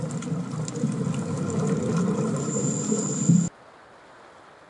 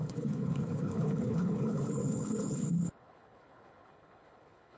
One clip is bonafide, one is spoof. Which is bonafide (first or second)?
first